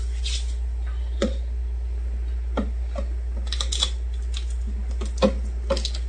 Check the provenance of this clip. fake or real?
real